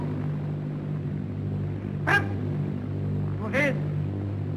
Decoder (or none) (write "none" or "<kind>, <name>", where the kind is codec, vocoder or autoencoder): none